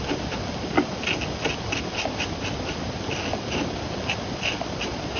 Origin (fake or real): real